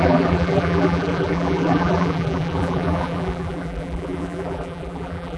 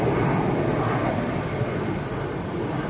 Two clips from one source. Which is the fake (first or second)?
first